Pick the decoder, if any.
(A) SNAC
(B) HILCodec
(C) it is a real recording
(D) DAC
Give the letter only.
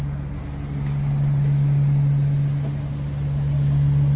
C